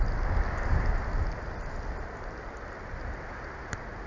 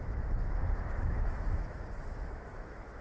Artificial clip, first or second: second